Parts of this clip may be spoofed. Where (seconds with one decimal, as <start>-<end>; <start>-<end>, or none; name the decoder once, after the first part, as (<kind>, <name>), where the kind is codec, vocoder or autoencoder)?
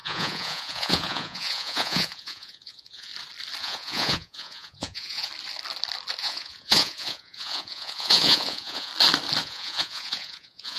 0.0-3.1 (vocoder, Vocos); 3.6-5.3; 6.2-8.9; 9.4-10.8